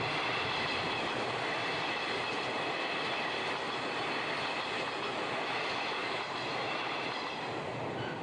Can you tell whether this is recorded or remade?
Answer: recorded